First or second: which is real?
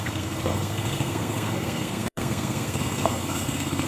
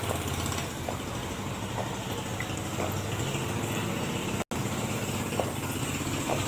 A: second